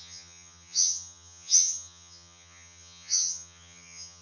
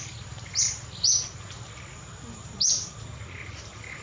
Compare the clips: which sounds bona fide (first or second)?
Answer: second